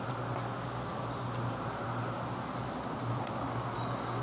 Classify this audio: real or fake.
real